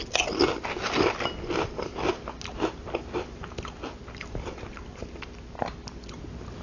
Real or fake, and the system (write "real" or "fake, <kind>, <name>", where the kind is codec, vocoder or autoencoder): real